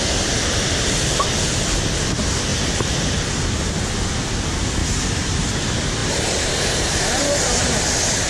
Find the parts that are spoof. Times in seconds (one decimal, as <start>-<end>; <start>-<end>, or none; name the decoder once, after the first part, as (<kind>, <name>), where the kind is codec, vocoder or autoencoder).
4.8-5.6 (vocoder, BigVGAN v2); 6.0-7.8

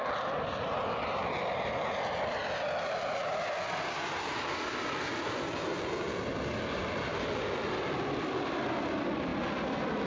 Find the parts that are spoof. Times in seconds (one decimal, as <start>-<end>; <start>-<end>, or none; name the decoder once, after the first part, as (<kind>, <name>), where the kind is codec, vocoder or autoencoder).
0.0-2.4 (vocoder, BigVGAN v2); 2.9-9.3

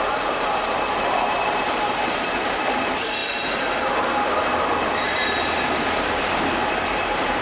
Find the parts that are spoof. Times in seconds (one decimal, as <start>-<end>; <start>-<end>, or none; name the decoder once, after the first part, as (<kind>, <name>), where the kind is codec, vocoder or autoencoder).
0.0-7.4 (vocoder, BigVGAN v2)

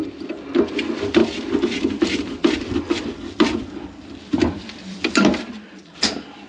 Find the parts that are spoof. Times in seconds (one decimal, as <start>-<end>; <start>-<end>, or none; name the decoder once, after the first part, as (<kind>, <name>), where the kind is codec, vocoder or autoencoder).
2.6-6.5 (vocoder, BigVGAN v2)

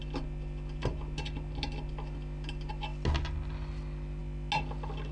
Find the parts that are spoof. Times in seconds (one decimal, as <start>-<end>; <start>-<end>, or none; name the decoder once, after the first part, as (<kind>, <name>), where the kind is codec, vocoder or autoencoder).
none

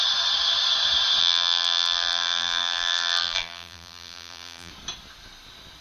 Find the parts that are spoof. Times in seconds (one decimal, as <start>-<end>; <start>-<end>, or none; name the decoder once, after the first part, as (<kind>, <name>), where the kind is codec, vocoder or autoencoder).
1.2-4.7 (vocoder, BigVGAN v2)